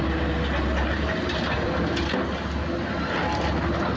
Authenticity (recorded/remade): recorded